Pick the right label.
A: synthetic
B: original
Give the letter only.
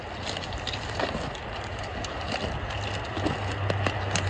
B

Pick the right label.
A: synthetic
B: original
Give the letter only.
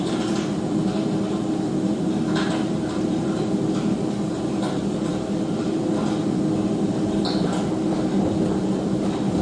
A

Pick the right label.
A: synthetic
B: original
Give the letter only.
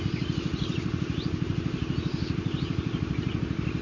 A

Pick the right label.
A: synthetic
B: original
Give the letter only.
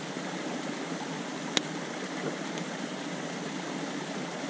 B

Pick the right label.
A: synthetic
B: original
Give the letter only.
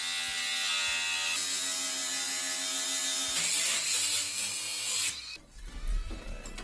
B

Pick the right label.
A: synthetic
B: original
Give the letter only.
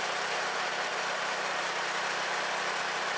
A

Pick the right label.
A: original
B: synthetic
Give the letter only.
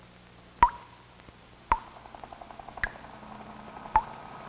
A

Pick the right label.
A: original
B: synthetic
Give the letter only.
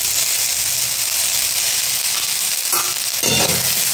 A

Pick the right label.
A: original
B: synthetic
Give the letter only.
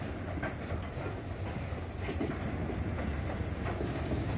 A